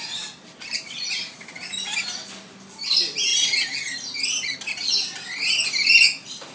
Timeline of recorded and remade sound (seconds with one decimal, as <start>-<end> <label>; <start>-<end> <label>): 0.0-6.5 recorded